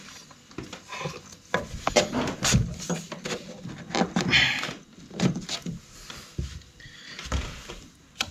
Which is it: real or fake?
real